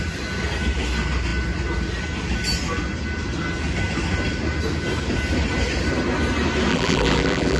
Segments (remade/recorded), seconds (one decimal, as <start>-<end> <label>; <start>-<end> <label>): 0.0-6.7 recorded; 6.7-7.6 remade